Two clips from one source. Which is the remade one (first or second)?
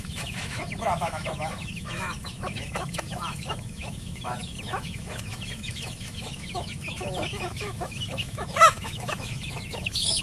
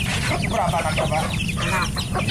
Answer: first